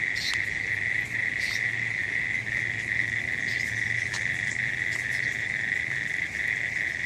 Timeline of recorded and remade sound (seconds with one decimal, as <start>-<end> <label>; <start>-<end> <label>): 0.0-7.1 recorded

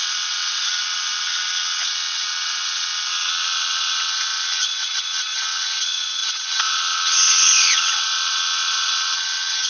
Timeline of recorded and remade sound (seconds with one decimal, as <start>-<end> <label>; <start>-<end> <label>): 0.0-9.7 remade

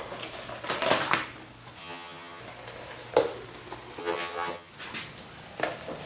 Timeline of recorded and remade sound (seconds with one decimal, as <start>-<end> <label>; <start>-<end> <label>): 0.0-1.8 recorded; 1.8-2.4 remade; 2.4-4.0 recorded; 4.0-4.7 remade; 4.7-6.1 recorded

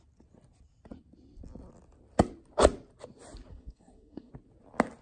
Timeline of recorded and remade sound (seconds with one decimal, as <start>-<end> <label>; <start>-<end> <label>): 0.0-3.5 recorded; 3.5-4.3 remade; 4.3-5.0 recorded

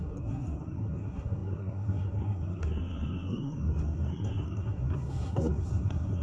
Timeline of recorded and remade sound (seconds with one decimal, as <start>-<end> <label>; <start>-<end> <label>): 0.0-6.2 remade

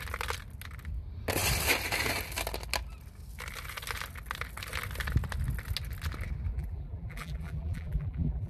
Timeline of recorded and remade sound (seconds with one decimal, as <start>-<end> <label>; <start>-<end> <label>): 0.0-6.5 recorded; 6.5-8.5 remade

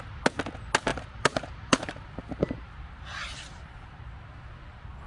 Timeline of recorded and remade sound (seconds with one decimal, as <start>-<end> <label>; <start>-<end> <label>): 0.0-0.9 recorded; 0.9-4.0 remade; 4.0-5.1 recorded

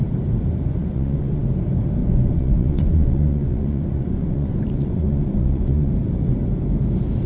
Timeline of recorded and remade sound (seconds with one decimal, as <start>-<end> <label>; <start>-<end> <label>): 0.0-0.8 recorded; 0.8-1.4 remade; 1.4-2.0 recorded; 2.0-5.9 remade; 5.9-7.3 recorded